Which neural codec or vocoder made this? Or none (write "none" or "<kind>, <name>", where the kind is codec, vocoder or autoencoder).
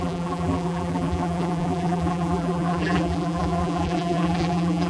vocoder, BigVGAN v2